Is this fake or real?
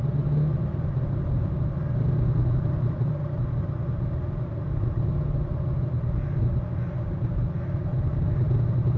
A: real